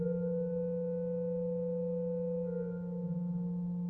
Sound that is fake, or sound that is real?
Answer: real